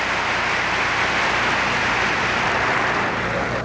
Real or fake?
real